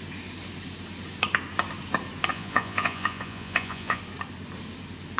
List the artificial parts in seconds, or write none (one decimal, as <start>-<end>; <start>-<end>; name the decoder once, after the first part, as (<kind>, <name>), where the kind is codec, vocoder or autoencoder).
2.3-4.0 (vocoder, Vocos)